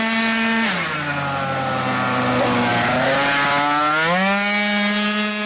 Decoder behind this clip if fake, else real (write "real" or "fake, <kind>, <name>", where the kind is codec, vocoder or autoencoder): real